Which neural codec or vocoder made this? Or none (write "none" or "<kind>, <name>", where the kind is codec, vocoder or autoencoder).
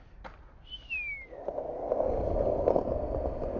none